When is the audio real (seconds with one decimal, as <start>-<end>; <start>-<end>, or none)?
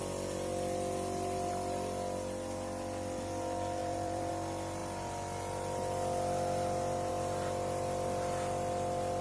0.0-3.8; 4.3-9.2